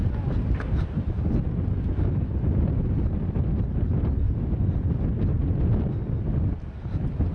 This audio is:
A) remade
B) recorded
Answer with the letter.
B